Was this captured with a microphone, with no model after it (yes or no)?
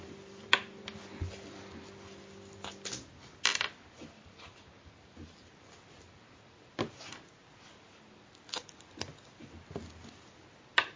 yes